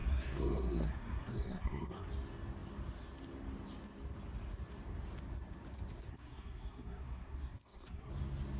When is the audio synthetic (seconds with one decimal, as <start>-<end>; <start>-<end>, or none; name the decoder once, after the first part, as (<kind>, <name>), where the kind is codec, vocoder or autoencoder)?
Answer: 0.0-2.1 (codec, SNAC); 6.1-8.1